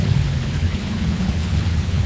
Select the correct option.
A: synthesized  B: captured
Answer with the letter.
A